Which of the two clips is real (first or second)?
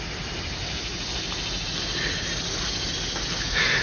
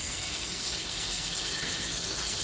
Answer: first